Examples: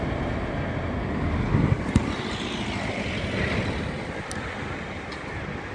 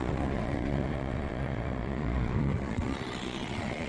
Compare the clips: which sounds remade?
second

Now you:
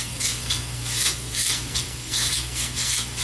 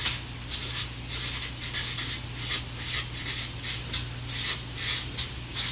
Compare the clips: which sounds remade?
first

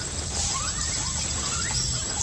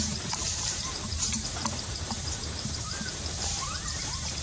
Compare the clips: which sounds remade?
second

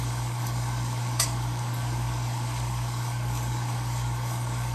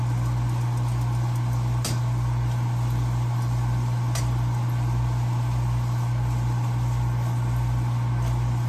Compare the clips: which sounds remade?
first